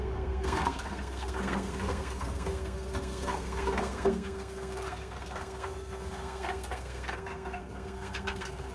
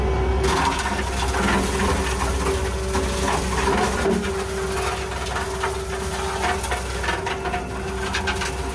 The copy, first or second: first